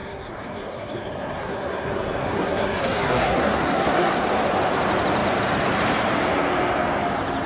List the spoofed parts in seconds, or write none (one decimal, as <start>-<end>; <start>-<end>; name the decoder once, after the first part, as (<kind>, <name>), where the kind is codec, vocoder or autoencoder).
0.0-4.2 (codec, SNAC)